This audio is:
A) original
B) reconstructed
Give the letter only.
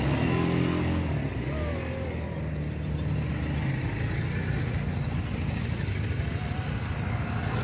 A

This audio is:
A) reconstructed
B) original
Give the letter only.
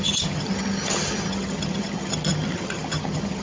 A